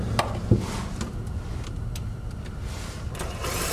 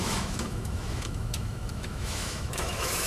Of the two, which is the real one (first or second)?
first